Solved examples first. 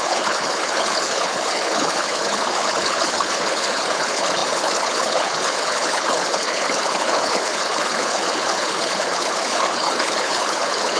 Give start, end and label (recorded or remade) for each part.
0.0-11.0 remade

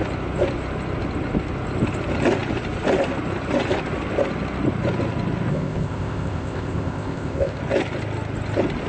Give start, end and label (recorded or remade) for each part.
0.0-5.5 recorded; 5.5-7.6 remade; 7.6-8.9 recorded

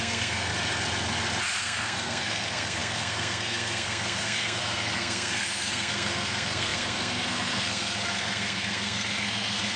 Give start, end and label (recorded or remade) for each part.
0.0-0.5 remade; 0.5-1.6 recorded; 1.6-9.8 remade